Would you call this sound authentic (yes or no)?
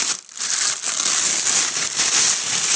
yes